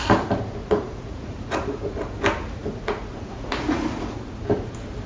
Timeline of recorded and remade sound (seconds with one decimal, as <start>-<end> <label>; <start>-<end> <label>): 0.0-0.6 recorded; 0.6-2.2 remade; 2.2-2.6 recorded; 2.6-4.3 remade; 4.3-5.1 recorded